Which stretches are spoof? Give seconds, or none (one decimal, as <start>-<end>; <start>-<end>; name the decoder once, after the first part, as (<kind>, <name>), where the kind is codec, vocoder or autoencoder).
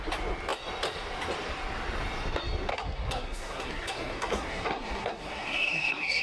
2.7-6.2 (codec, SNAC)